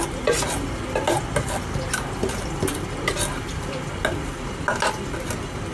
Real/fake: real